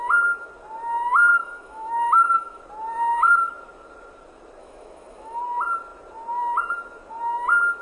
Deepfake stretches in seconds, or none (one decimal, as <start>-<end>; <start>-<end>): 1.3-2.6; 4.6-5.4